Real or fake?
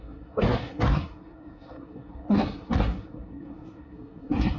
fake